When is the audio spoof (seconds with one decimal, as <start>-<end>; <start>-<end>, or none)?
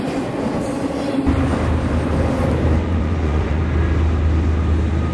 2.8-3.6